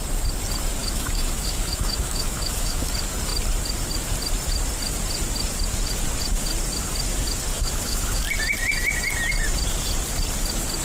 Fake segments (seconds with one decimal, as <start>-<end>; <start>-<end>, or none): 0.8-2.9; 7.5-8.2